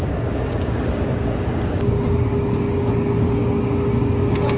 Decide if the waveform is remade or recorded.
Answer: remade